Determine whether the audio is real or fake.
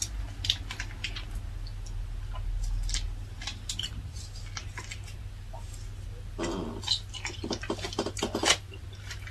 real